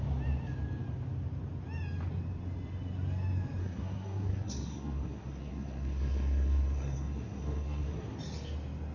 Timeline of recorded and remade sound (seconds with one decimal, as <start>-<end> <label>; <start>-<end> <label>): 0.0-3.6 recorded; 3.6-8.2 remade; 8.2-8.9 recorded